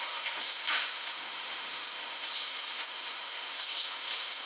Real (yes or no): no